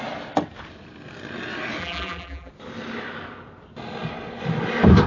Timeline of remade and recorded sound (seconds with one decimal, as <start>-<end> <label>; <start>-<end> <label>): 0.0-1.8 recorded; 1.8-2.5 remade; 2.5-5.1 recorded

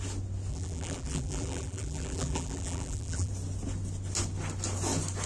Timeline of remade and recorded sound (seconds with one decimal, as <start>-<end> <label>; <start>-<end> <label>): 0.0-0.5 recorded; 0.5-3.3 remade; 3.3-5.3 recorded

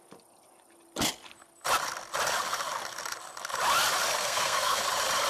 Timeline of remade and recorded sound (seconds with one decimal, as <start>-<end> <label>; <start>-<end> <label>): 0.0-4.2 recorded; 4.2-4.8 remade; 4.8-5.3 recorded

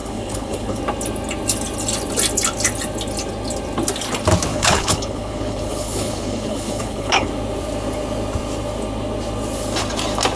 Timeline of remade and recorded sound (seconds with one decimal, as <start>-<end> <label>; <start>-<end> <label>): 0.0-0.8 remade; 0.8-4.5 recorded; 4.5-7.3 remade; 7.3-10.4 recorded

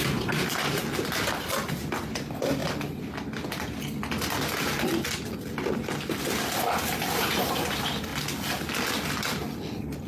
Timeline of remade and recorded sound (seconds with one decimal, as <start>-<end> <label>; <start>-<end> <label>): 0.0-2.6 remade; 2.6-6.6 recorded; 6.6-8.1 remade; 8.1-10.1 recorded

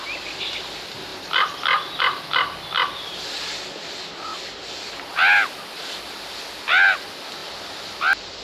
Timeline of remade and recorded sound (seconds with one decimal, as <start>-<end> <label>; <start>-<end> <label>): 0.0-8.4 recorded

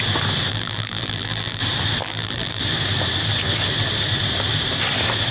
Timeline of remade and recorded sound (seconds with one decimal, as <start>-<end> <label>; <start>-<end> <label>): 0.0-0.5 recorded; 0.5-1.6 remade; 1.6-2.0 recorded; 2.0-2.6 remade; 2.6-5.3 recorded

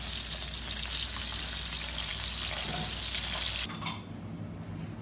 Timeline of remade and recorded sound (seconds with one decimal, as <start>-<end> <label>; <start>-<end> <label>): 0.0-5.0 recorded